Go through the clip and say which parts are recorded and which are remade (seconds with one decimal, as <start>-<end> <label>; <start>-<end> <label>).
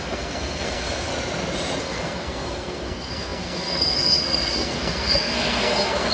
0.0-1.1 remade; 1.1-1.8 recorded; 1.8-6.1 remade